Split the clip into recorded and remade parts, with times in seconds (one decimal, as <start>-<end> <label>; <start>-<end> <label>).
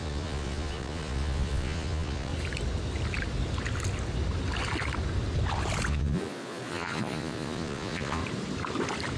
0.0-2.3 remade; 2.3-5.9 recorded; 5.9-8.2 remade; 8.2-9.2 recorded